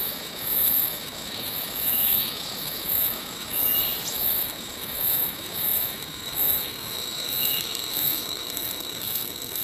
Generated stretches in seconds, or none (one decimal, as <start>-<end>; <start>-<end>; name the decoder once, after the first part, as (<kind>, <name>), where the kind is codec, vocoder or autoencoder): 0.0-3.6 (autoencoder, DAC-VAE); 4.1-9.6